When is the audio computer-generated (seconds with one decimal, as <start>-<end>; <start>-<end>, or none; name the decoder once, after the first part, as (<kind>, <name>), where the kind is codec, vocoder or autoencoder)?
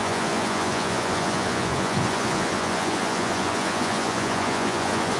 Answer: 0.0-5.2 (vocoder, Vocos)